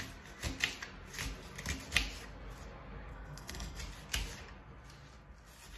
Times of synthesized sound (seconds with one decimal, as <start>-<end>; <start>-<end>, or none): 3.1-3.8